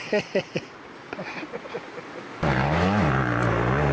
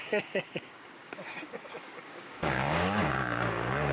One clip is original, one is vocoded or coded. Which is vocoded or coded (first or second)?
second